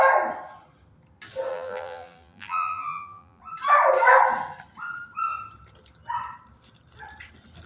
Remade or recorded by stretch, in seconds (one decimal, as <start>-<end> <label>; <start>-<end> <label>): 0.0-1.5 recorded; 1.5-3.4 remade; 3.4-7.7 recorded